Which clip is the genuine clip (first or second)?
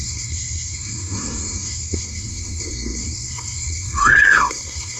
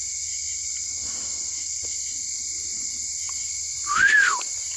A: second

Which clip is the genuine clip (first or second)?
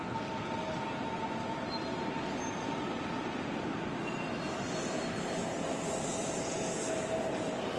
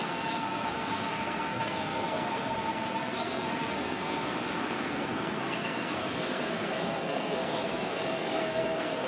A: first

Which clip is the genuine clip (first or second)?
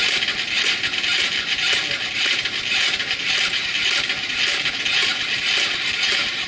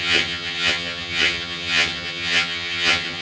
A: first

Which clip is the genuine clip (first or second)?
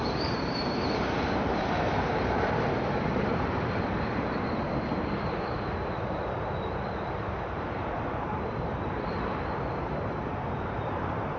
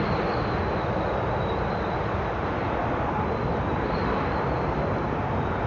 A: second